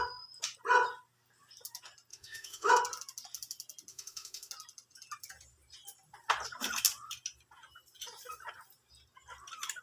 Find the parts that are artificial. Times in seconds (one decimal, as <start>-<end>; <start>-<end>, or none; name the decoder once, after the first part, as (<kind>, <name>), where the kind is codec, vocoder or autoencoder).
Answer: 2.1-2.7 (autoencoder, DAC-VAE); 3.9-4.5